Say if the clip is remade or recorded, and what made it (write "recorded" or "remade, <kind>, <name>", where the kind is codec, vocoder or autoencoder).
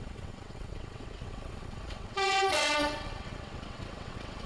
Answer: remade, vocoder, WaveNeXt